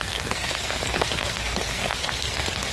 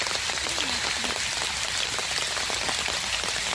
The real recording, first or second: second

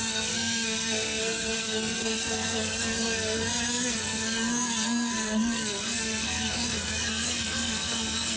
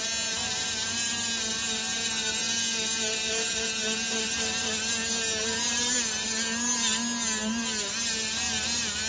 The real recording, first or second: second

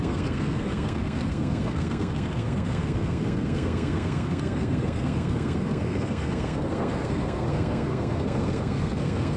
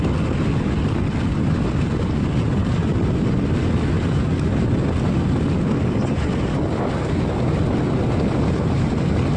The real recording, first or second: second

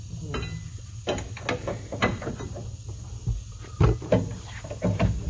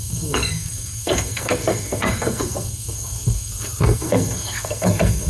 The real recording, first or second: first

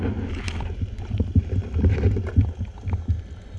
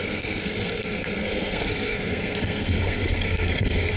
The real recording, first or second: first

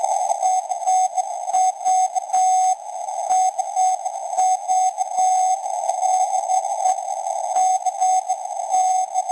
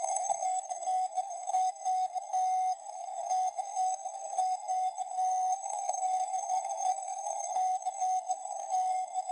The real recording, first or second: first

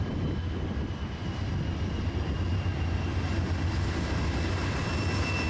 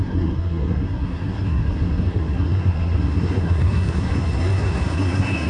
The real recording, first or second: first